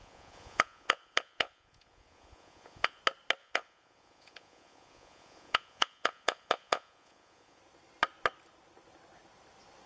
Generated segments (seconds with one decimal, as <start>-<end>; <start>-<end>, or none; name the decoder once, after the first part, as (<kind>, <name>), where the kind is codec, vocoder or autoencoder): 0.0-3.0 (vocoder, Vocos); 3.4-7.6